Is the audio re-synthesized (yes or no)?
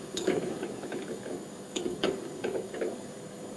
yes